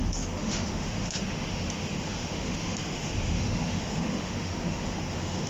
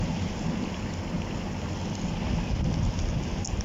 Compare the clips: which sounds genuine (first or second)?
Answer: second